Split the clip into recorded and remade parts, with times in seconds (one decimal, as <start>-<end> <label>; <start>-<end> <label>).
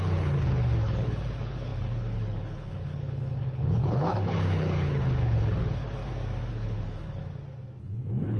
0.0-6.0 remade; 6.0-6.5 recorded; 6.5-7.2 remade; 7.2-7.8 recorded; 7.8-8.4 remade